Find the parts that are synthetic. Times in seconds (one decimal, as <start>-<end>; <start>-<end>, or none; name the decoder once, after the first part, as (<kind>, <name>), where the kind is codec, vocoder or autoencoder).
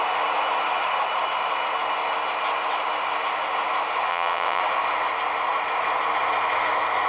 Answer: 4.1-4.6 (vocoder, WaveNeXt)